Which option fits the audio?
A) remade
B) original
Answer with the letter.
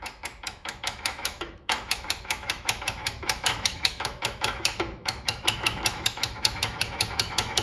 A